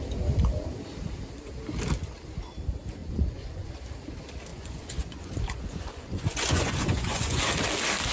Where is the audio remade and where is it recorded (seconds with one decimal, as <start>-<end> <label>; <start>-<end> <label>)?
0.0-3.0 recorded; 3.0-3.7 remade; 3.7-4.5 recorded; 4.5-7.4 remade; 7.4-8.1 recorded